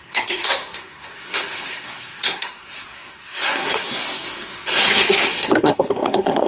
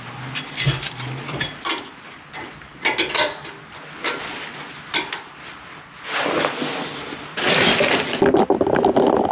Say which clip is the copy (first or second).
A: first